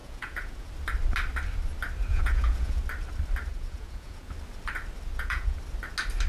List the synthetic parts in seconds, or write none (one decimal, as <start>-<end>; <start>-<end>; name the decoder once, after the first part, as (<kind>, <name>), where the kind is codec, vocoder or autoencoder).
0.0-0.7 (vocoder, Vocos); 2.1-2.8; 3.5-4.3; 5.1-5.6